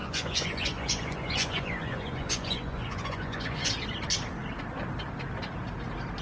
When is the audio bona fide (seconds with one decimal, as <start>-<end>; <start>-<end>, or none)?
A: 3.7-6.2